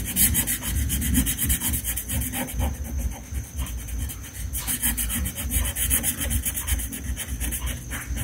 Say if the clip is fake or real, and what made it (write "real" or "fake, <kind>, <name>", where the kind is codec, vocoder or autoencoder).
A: real